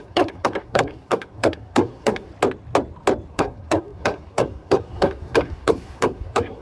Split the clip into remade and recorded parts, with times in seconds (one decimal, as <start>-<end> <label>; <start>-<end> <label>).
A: 0.0-2.3 remade; 2.3-3.3 recorded; 3.3-6.6 remade